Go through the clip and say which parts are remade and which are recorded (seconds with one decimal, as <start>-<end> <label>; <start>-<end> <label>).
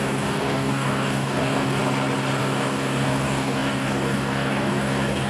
0.0-1.8 remade; 1.8-2.4 recorded; 2.4-5.3 remade